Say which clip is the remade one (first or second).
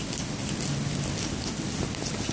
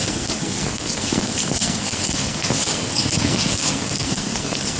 second